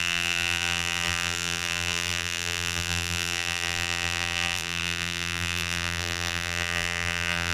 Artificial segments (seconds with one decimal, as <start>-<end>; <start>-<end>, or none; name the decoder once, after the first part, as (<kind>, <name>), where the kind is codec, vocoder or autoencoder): 0.0-7.5 (vocoder, BigVGAN v2)